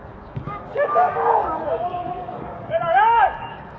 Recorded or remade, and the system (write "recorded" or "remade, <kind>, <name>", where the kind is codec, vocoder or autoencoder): remade, codec, DAC